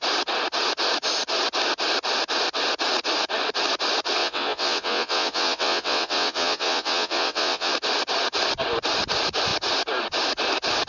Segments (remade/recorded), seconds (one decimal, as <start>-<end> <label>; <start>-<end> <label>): 0.0-4.2 recorded; 4.2-7.7 remade; 7.7-10.9 recorded